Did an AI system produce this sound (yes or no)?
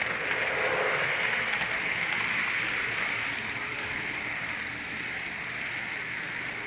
no